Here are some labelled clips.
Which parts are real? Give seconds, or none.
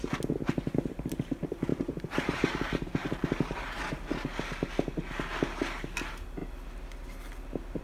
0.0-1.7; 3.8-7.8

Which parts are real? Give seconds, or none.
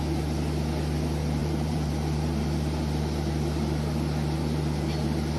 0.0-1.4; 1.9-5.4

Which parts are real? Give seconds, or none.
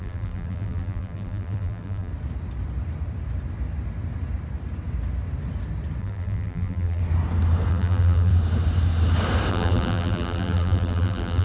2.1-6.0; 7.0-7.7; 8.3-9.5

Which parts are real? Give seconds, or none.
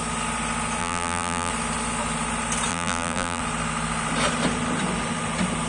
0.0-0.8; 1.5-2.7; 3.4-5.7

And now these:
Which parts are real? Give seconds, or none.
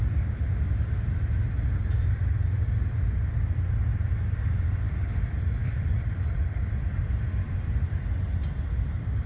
0.0-5.6; 7.1-9.3